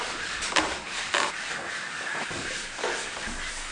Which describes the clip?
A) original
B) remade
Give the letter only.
B